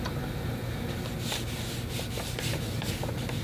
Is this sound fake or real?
real